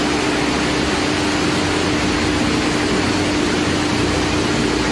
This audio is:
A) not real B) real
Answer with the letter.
B